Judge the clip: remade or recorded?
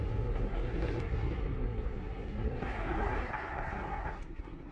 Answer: remade